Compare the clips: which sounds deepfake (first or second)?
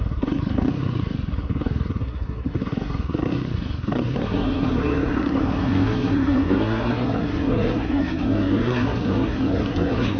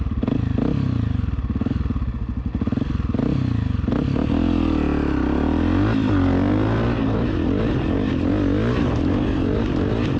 first